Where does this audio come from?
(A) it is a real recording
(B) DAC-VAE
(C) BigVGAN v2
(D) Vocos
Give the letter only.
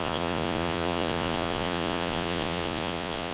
D